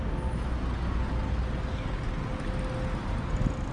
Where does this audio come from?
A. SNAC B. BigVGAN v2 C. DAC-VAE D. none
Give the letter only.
D